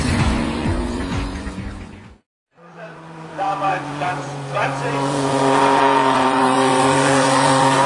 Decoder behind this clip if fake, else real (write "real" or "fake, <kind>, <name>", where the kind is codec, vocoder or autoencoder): fake, vocoder, Vocos